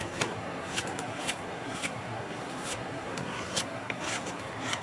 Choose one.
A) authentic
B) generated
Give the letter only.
B